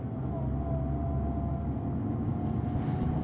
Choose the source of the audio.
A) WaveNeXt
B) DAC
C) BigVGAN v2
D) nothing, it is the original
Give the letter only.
D